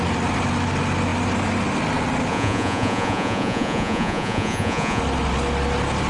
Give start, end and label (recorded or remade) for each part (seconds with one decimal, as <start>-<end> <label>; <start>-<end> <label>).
0.0-2.3 recorded; 2.3-5.0 remade; 5.0-6.1 recorded